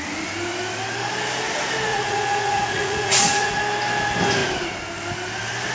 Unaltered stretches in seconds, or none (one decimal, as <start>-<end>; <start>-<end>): 0.0-1.9; 3.6-5.7